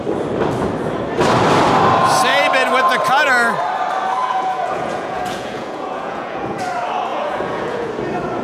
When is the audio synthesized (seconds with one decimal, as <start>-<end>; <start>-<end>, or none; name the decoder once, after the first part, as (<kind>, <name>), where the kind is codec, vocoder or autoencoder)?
4.2-6.6 (vocoder, Vocos); 7.1-7.9